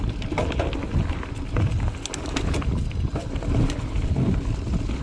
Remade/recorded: recorded